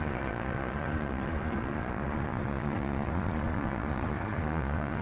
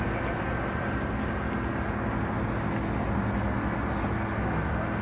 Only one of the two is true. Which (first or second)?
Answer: second